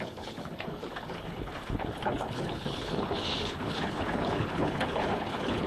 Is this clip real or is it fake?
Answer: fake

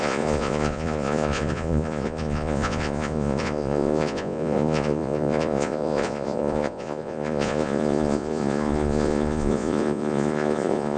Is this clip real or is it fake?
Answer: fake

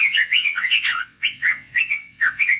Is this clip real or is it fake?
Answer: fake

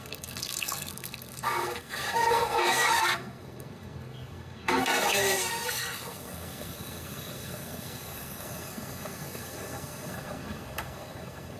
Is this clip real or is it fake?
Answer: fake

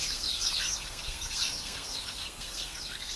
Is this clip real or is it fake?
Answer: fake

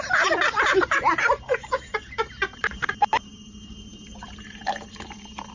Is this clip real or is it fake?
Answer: fake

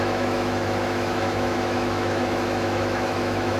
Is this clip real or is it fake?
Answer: fake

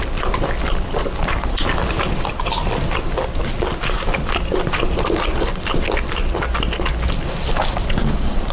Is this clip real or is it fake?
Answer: real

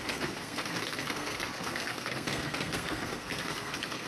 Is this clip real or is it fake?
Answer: fake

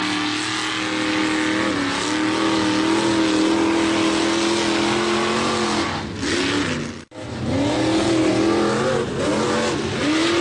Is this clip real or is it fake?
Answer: real